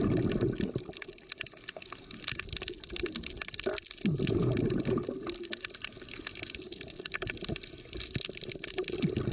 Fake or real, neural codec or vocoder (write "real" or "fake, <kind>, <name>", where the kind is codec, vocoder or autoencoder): real